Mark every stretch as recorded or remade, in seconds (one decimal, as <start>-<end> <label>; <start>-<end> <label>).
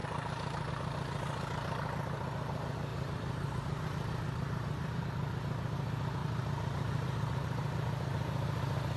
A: 0.0-2.9 recorded; 2.9-5.0 remade; 5.0-6.2 recorded; 6.2-9.0 remade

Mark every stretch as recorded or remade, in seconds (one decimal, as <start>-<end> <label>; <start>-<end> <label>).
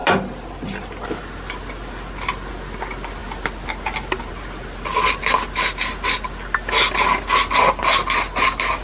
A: 0.0-8.8 recorded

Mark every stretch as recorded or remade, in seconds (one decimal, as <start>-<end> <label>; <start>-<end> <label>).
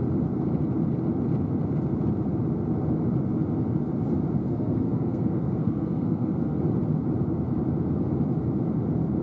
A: 0.0-4.4 recorded; 4.4-6.6 remade; 6.6-9.2 recorded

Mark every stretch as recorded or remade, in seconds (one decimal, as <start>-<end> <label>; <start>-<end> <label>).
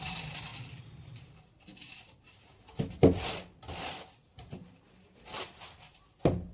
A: 0.0-6.5 recorded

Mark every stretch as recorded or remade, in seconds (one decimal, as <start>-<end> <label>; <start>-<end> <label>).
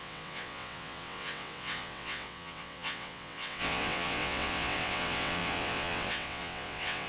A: 0.0-7.1 remade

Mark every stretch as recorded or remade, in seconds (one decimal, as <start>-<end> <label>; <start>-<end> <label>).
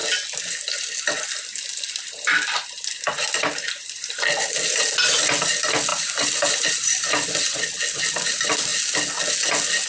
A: 0.0-5.9 recorded; 5.9-7.8 remade; 7.8-9.9 recorded